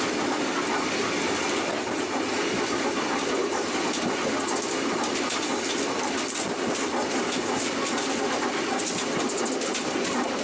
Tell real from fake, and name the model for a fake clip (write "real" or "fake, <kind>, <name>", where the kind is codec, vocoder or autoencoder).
real